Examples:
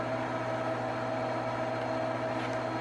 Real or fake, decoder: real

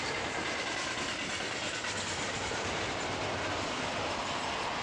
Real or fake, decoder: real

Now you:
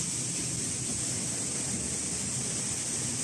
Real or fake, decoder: real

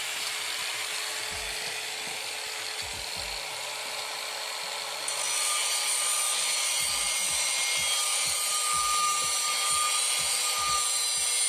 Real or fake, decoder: real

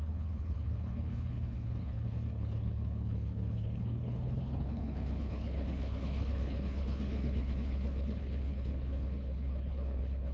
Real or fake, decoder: fake, codec, HILCodec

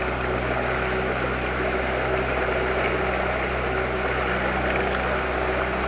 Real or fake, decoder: real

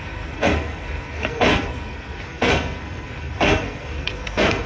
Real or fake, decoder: fake, codec, SNAC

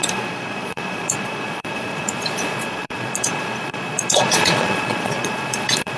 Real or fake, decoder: fake, vocoder, Vocos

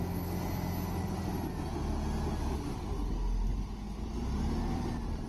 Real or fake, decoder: real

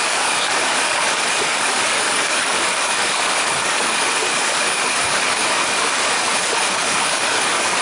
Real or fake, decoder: fake, codec, DAC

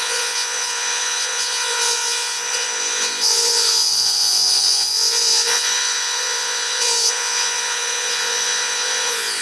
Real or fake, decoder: fake, vocoder, Vocos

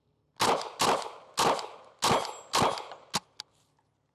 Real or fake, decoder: real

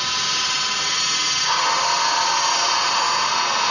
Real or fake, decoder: real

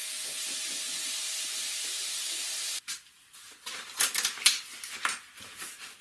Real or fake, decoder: real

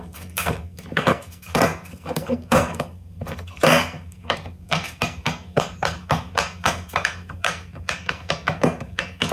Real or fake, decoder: fake, codec, SNAC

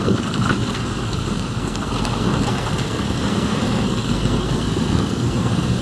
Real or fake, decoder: fake, codec, SNAC